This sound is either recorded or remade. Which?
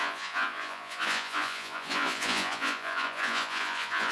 remade